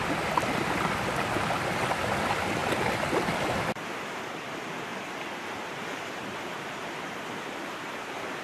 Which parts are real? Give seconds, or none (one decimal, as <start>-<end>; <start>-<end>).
0.0-8.4